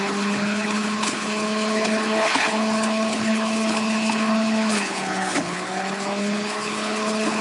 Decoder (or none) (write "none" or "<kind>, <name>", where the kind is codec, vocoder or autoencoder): codec, HILCodec